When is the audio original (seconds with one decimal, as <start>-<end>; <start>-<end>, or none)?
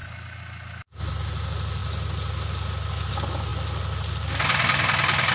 0.0-5.3